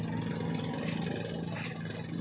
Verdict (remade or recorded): recorded